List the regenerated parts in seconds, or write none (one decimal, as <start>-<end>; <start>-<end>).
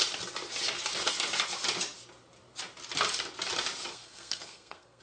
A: 3.9-5.0